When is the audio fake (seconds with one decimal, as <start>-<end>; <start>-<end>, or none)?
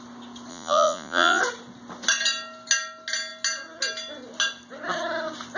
0.5-1.4